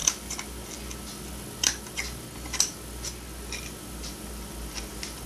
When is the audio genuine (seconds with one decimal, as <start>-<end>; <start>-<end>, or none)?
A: 0.0-5.3